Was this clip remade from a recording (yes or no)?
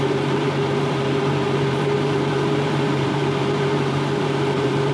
yes